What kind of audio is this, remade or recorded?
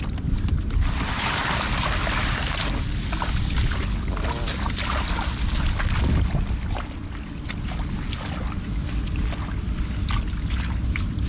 recorded